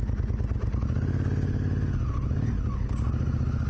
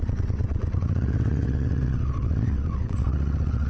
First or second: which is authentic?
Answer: first